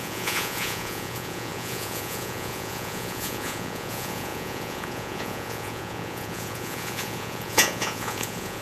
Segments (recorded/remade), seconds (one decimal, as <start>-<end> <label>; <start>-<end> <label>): 0.0-8.6 remade